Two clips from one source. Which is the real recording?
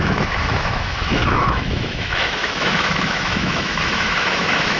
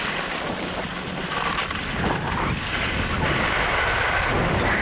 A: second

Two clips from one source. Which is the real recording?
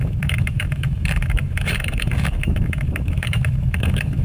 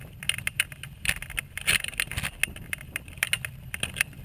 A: second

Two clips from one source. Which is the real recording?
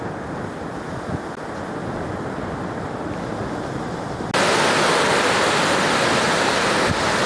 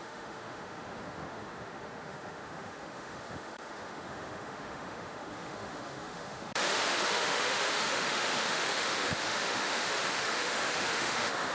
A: first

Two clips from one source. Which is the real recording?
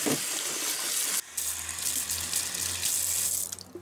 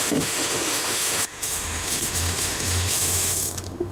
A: first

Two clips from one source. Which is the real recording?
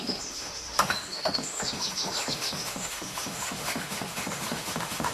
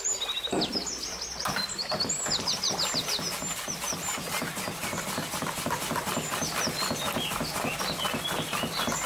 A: second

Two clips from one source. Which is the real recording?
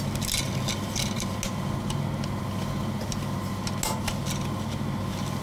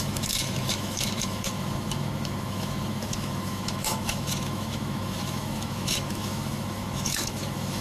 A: first